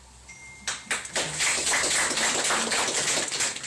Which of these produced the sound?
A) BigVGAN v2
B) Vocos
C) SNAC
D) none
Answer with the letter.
D